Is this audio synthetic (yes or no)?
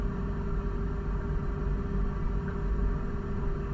no